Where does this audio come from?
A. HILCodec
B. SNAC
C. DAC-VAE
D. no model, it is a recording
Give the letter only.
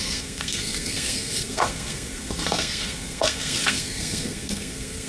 B